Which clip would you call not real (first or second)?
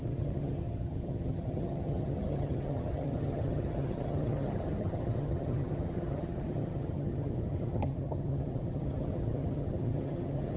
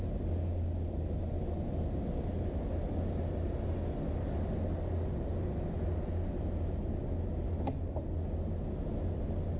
first